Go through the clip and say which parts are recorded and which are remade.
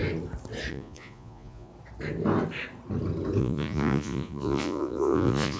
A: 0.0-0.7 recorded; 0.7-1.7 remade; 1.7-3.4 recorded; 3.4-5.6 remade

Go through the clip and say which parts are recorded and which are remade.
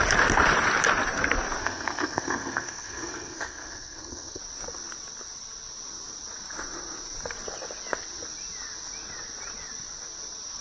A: 0.0-1.6 recorded; 1.6-4.4 remade; 4.4-10.6 recorded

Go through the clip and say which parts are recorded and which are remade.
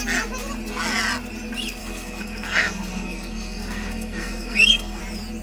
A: 0.0-1.8 recorded; 1.8-5.0 remade; 5.0-5.4 recorded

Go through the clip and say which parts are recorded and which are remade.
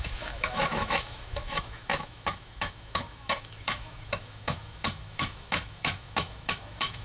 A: 0.0-7.0 remade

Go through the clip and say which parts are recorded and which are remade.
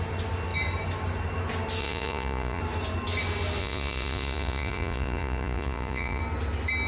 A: 0.0-1.8 recorded; 1.8-2.6 remade; 2.6-3.6 recorded; 3.6-6.2 remade; 6.2-6.9 recorded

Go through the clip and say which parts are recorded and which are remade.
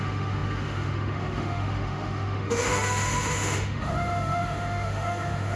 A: 0.0-5.6 remade